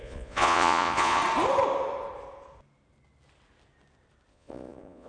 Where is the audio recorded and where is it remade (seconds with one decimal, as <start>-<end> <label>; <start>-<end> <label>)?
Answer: 0.0-1.2 remade; 1.2-4.3 recorded; 4.3-5.1 remade